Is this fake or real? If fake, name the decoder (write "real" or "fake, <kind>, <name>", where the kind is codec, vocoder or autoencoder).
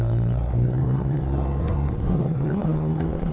fake, codec, SNAC